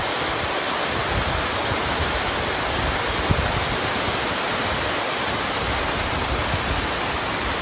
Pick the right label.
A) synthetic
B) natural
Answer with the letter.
B